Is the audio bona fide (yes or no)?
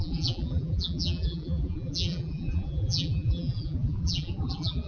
no